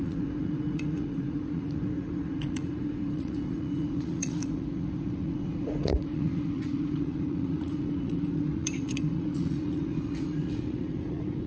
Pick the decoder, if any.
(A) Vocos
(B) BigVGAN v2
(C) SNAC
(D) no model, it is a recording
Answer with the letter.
A